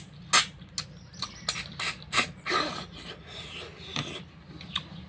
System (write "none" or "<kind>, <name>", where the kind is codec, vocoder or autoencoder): none